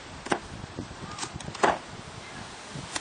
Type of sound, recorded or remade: recorded